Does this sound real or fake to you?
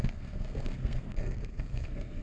fake